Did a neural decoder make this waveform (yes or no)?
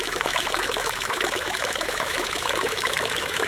yes